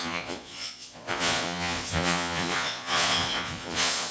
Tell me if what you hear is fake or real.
fake